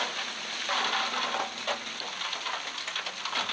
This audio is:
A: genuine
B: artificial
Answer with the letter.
A